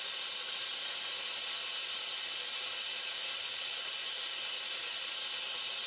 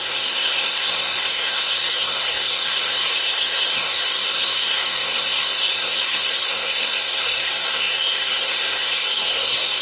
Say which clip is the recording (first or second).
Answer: first